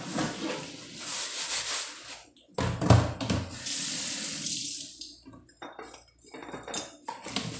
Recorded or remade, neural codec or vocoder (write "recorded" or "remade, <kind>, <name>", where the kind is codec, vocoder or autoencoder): recorded